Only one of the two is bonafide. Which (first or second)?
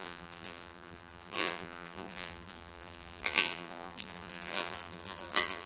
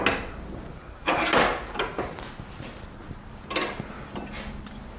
second